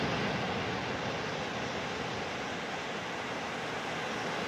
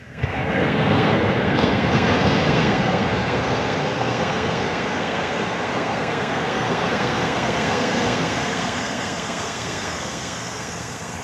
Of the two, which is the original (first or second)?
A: first